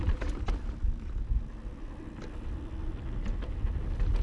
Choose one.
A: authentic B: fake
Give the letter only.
A